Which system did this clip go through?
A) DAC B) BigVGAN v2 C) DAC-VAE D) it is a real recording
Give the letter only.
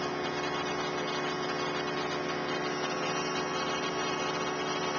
D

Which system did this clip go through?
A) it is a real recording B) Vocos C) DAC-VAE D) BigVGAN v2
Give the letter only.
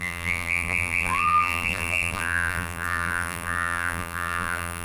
D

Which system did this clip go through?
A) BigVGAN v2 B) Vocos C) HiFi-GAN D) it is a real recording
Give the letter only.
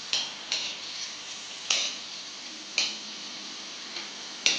D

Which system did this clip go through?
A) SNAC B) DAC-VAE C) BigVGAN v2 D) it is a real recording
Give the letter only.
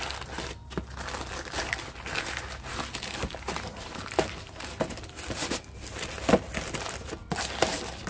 D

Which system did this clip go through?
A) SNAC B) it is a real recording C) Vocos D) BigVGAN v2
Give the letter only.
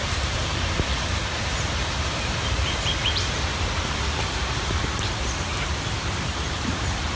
D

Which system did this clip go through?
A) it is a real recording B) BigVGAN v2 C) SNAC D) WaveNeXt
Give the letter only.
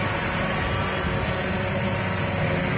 A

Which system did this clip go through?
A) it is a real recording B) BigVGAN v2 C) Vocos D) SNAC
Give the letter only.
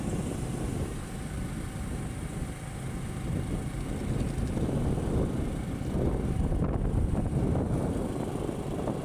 A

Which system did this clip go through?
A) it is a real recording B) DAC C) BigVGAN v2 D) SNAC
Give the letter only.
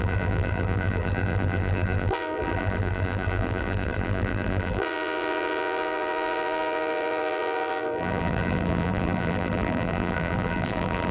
C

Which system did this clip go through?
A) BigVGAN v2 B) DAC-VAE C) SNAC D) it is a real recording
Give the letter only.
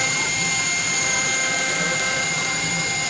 A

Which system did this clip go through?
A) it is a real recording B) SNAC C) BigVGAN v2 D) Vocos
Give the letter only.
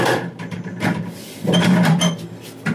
C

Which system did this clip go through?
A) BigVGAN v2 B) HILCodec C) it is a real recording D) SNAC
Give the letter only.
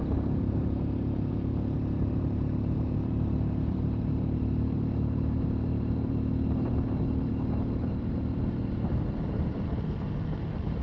A